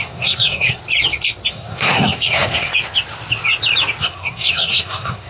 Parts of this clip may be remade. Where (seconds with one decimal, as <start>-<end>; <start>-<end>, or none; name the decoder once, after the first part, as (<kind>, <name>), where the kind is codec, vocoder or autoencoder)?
0.0-0.8 (codec, SNAC); 1.5-2.7; 4.0-5.3